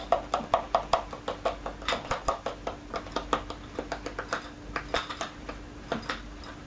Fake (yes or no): no